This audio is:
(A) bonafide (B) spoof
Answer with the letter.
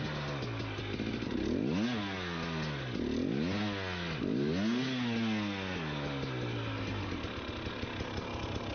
A